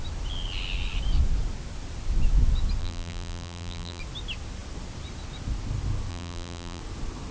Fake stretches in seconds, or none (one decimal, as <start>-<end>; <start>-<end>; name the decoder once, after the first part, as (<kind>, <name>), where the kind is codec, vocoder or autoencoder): 2.8-4.0 (vocoder, BigVGAN v2); 6.1-6.8